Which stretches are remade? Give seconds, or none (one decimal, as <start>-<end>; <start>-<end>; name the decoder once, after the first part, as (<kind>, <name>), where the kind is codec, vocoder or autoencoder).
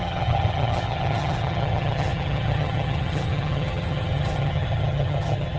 0.0-5.6 (vocoder, HiFi-GAN)